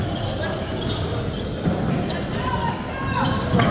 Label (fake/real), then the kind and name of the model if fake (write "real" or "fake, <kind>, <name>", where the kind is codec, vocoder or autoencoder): real